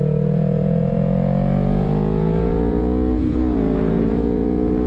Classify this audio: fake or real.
fake